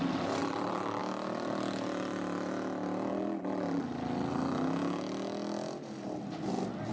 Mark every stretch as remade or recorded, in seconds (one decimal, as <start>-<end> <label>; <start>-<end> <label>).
0.0-0.4 recorded; 0.4-1.0 remade; 1.0-3.1 recorded; 3.1-3.8 remade; 3.8-6.9 recorded